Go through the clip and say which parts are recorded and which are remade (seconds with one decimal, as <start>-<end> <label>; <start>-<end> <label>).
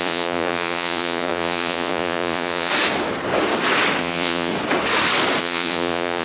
0.0-2.7 remade; 2.7-4.0 recorded; 4.0-4.5 remade; 4.5-5.4 recorded; 5.4-6.2 remade